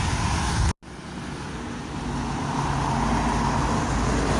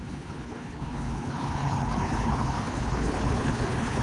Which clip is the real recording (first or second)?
first